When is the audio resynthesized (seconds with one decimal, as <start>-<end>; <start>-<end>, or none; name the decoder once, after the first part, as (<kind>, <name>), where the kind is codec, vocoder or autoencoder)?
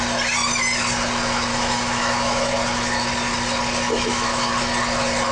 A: 1.5-2.5 (autoencoder, DAC-VAE); 3.9-4.5